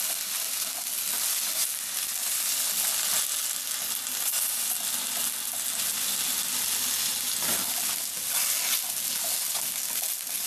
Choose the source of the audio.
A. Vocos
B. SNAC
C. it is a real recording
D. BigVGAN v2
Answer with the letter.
C